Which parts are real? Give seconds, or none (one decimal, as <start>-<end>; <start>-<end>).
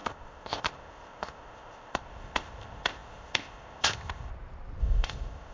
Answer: 4.3-4.8